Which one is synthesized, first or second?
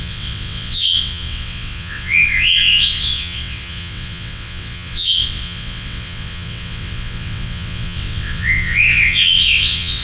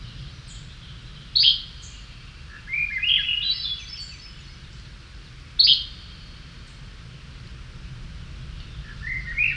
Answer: first